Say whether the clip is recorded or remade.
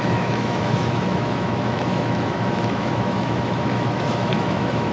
remade